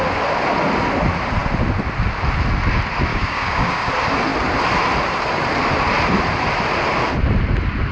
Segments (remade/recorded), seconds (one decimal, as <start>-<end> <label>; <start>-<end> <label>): 0.0-3.1 recorded; 3.1-3.9 remade; 3.9-7.9 recorded